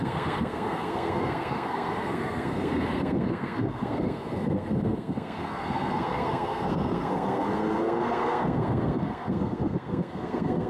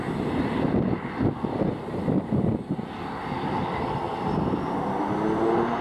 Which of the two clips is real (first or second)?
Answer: second